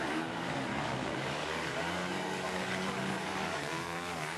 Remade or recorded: remade